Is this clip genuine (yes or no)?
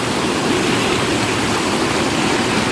yes